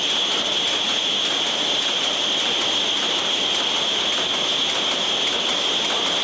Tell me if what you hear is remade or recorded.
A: recorded